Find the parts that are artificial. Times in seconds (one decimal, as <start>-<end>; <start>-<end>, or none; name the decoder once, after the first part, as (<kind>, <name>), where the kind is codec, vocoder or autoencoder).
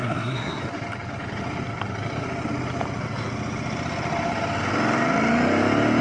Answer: 0.0-0.6 (codec, SNAC)